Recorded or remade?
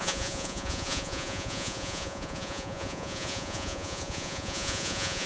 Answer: remade